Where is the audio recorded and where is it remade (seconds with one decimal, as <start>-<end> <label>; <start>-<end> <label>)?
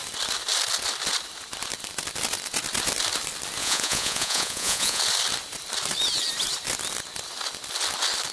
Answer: 0.0-3.6 recorded; 3.6-5.0 remade; 5.0-8.3 recorded